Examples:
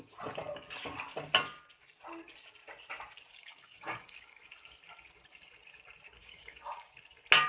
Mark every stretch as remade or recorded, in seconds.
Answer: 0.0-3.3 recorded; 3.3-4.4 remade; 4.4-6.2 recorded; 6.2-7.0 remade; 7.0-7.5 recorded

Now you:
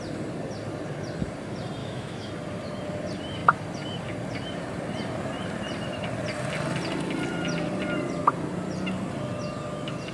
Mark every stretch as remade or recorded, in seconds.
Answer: 0.0-1.8 recorded; 1.8-2.3 remade; 2.3-10.1 recorded

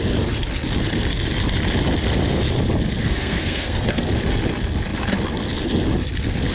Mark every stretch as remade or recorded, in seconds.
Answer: 0.0-3.0 recorded; 3.0-4.1 remade; 4.1-6.5 recorded

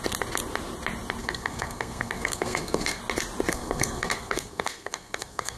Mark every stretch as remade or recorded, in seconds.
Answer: 0.0-1.2 recorded; 1.2-3.0 remade; 3.0-3.5 recorded; 3.5-5.6 remade

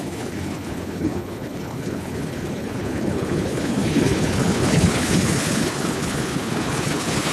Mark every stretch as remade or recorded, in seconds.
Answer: 0.0-7.3 remade